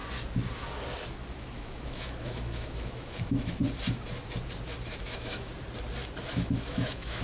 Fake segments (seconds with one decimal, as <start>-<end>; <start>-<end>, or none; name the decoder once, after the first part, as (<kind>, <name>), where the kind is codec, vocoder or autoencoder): 1.4-3.6 (autoencoder, DAC-VAE); 5.0-5.5; 6.3-7.2

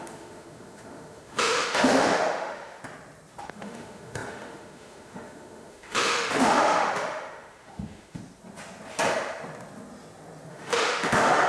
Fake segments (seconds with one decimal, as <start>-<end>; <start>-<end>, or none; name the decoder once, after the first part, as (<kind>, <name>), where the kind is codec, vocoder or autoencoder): 0.0-2.8 (autoencoder, DAC-VAE); 3.4-8.2; 10.5-11.5

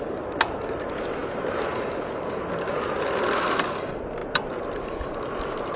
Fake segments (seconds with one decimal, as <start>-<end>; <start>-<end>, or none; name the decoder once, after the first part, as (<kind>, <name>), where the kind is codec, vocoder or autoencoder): none